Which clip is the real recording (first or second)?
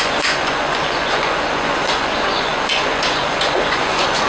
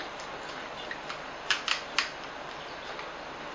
second